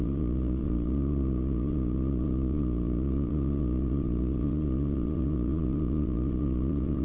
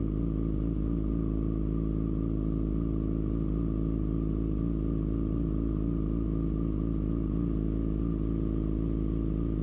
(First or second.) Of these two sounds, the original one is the second